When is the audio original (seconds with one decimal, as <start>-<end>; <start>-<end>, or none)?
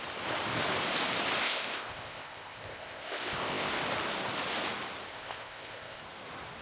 0.0-1.4; 3.7-5.1; 6.0-6.6